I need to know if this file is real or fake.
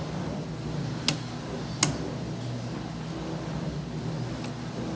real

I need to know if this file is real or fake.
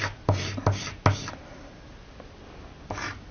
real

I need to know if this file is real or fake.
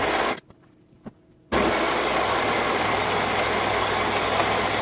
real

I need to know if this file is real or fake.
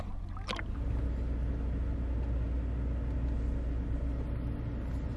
real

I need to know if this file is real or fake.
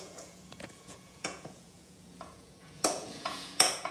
fake